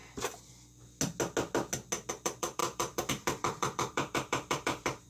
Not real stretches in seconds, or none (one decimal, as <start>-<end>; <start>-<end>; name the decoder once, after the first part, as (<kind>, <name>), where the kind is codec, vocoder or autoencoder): 2.1-5.1 (vocoder, BigVGAN v2)